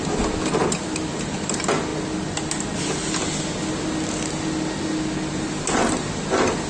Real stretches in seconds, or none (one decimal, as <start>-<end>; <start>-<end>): 0.0-6.7